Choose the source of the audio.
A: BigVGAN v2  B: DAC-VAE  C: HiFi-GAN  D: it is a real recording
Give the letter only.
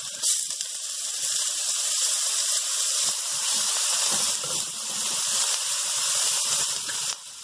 A